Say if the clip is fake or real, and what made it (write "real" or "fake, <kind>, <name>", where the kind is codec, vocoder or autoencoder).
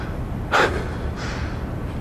real